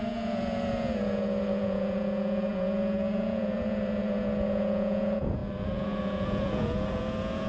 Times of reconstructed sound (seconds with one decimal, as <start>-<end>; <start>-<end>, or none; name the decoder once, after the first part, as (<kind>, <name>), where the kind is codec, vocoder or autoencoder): 0.0-7.5 (vocoder, Vocos)